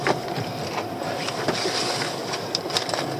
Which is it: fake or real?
fake